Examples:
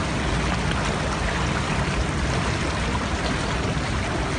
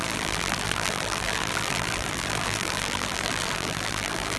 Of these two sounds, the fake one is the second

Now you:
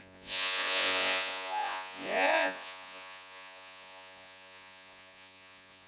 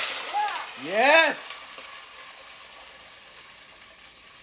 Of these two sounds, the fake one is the first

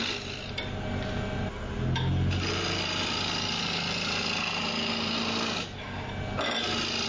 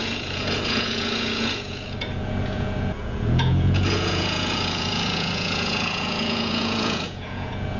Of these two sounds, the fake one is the second